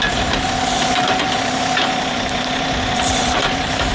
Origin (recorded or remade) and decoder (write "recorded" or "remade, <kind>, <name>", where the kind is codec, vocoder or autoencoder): remade, vocoder, BigVGAN v2